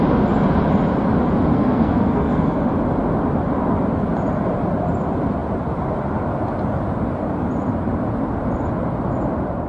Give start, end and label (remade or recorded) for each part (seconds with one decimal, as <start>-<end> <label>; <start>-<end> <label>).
0.0-1.5 recorded; 1.5-2.7 remade; 2.7-9.7 recorded